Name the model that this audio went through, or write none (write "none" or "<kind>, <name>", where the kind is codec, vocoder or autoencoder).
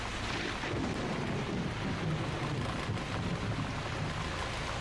none